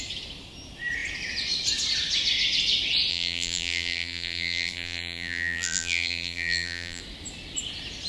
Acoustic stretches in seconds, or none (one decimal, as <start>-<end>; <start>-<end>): 0.0-3.1; 7.0-8.1